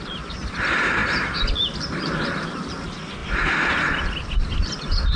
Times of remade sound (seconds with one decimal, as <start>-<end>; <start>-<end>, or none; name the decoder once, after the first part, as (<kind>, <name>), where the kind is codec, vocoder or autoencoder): 1.0-1.5 (vocoder, BigVGAN v2)